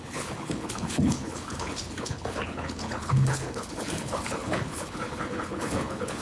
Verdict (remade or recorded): remade